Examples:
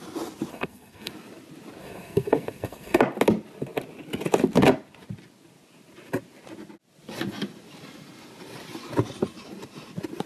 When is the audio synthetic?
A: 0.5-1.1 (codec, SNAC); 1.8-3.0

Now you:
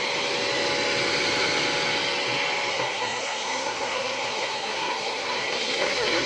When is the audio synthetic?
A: 2.7-6.3 (codec, SNAC)